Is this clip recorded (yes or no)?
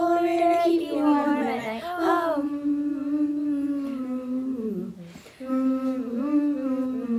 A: yes